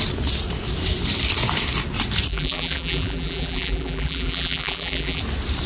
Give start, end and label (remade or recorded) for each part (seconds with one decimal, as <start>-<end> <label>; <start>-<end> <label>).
0.0-2.3 recorded; 2.3-5.2 remade; 5.2-5.7 recorded